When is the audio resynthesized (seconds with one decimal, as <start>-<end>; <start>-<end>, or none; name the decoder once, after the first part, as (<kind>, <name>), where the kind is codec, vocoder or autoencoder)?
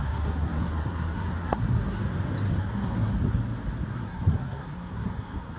0.0-2.0 (codec, SNAC); 2.6-3.1; 3.9-5.6